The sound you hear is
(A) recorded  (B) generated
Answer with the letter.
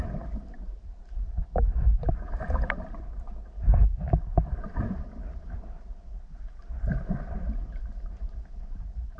A